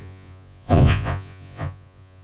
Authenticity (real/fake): fake